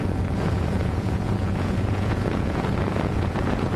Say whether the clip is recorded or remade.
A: remade